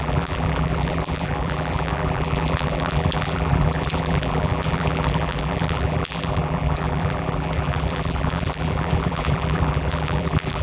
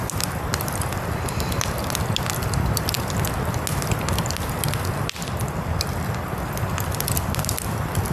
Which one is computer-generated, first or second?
first